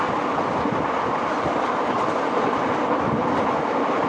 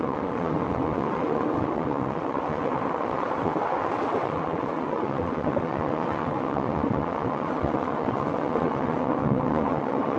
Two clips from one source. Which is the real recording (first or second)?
first